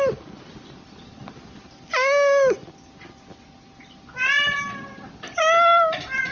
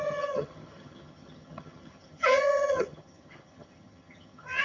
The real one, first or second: first